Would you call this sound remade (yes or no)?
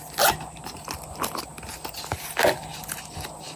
no